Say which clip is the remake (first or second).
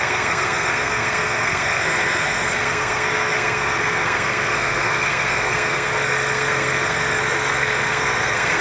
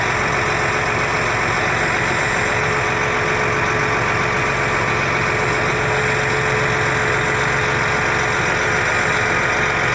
first